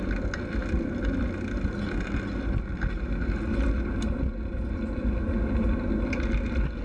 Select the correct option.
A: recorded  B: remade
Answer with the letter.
A